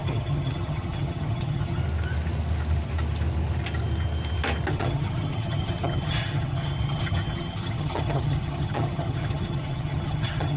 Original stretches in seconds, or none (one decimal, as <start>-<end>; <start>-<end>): 1.8-4.7